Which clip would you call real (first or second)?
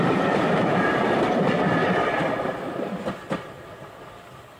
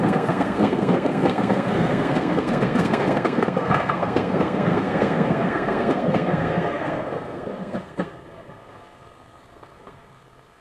first